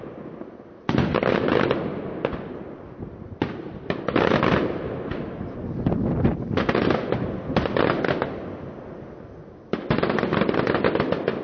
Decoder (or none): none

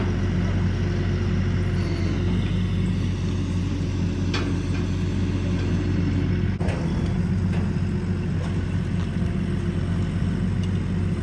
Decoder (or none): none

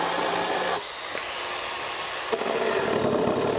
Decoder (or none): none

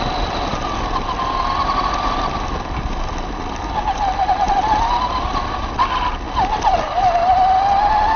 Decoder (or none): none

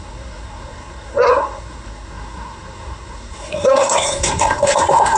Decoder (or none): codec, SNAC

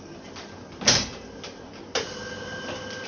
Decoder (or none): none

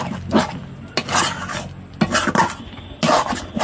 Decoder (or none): none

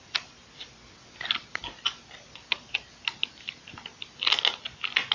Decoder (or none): none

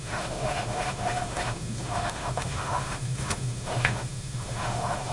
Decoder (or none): autoencoder, DAC-VAE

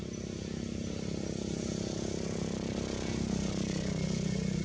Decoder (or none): none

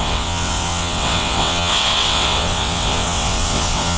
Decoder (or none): vocoder, WaveNeXt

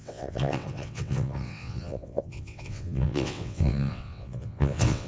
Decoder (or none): vocoder, WaveNeXt